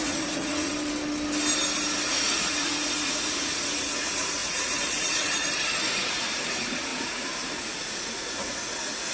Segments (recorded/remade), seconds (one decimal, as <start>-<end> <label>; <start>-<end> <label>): 0.0-0.7 remade; 0.7-2.1 recorded; 2.1-9.1 remade